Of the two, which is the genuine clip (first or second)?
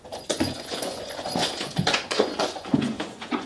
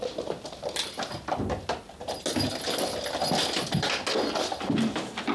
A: second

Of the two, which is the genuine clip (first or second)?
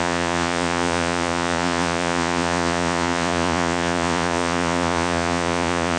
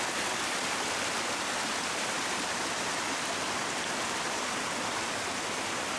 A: second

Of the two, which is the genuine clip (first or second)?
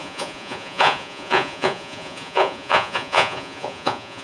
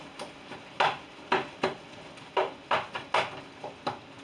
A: second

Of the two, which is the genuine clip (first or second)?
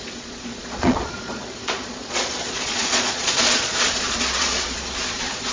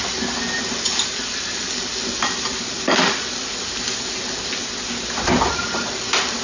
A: second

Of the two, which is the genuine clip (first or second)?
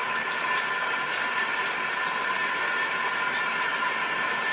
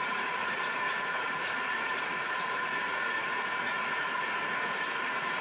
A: first